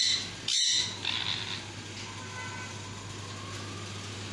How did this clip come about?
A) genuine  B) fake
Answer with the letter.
A